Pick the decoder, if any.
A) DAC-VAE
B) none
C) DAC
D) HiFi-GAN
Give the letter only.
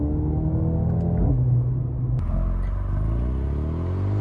B